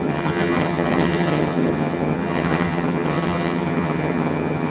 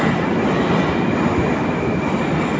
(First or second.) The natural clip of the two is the second